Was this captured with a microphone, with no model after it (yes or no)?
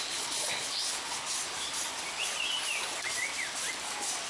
yes